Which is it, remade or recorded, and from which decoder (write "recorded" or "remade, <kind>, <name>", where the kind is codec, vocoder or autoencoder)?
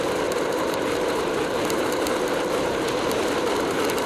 remade, vocoder, BigVGAN v2